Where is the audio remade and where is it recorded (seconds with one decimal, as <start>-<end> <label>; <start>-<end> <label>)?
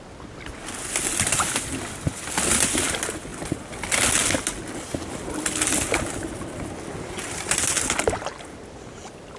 0.0-9.4 recorded